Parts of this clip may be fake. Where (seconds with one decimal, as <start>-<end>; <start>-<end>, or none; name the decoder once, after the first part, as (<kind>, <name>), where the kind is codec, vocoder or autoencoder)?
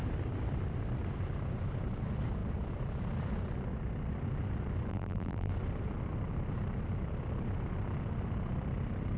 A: 4.9-5.5 (vocoder, BigVGAN v2)